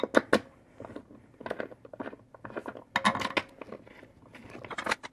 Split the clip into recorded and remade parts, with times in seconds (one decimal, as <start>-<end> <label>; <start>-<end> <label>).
0.0-5.1 recorded

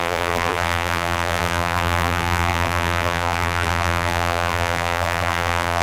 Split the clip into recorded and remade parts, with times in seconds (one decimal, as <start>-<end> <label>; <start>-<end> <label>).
0.0-5.8 remade

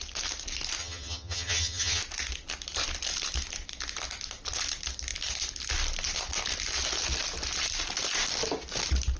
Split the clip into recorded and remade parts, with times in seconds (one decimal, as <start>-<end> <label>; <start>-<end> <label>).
0.0-0.8 recorded; 0.8-2.0 remade; 2.0-9.2 recorded

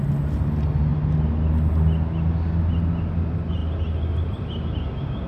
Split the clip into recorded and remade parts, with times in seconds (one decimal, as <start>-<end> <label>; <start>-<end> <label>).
0.0-5.3 recorded

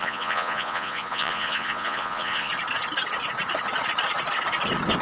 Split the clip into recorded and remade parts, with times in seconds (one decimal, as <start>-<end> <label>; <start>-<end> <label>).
0.0-2.5 remade; 2.5-5.0 recorded

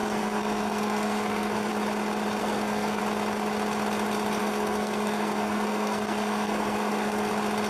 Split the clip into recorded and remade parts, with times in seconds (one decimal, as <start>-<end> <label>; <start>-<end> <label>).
0.0-1.7 remade; 1.7-2.4 recorded; 2.4-3.0 remade; 3.0-4.4 recorded; 4.4-7.3 remade; 7.3-7.7 recorded

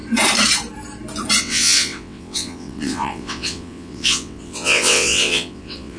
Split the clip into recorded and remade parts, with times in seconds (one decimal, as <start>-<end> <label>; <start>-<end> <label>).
0.0-1.4 recorded; 1.4-6.0 remade

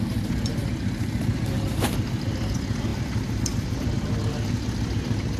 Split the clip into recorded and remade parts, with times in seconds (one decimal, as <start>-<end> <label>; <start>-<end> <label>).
0.0-5.4 recorded